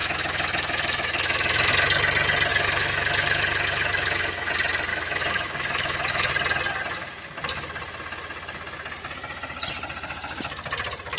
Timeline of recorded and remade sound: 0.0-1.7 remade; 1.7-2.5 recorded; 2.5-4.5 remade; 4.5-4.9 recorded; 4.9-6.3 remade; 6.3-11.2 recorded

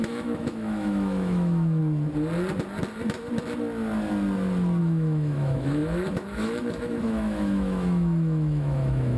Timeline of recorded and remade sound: 0.0-1.8 remade; 1.8-4.8 recorded; 4.8-9.2 remade

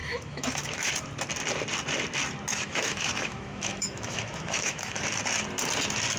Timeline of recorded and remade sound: 0.0-0.9 remade; 0.9-2.5 recorded; 2.5-5.0 remade; 5.0-6.2 recorded

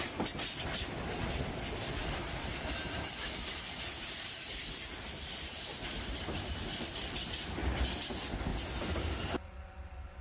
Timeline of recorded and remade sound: 0.0-10.2 recorded